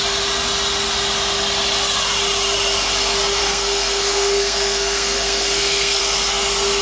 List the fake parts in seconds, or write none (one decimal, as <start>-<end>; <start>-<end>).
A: 3.4-6.0